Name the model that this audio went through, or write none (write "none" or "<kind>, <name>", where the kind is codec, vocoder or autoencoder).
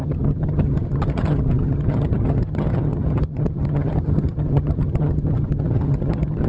vocoder, HiFi-GAN